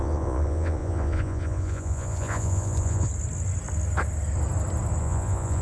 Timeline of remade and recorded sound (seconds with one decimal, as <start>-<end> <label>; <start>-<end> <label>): 0.0-3.1 remade; 3.1-5.0 recorded; 5.0-5.6 remade